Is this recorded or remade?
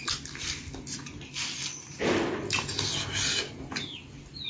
recorded